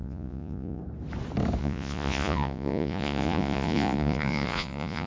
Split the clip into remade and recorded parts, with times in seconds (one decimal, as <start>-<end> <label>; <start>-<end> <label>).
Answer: 0.0-0.8 remade; 0.8-1.6 recorded; 1.6-5.1 remade